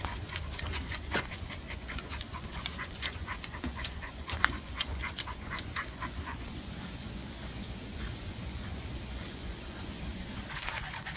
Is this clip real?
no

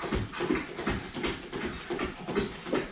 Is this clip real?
yes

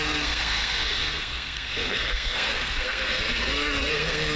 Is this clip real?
no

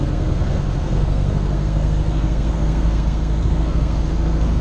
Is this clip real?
no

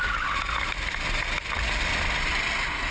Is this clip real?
yes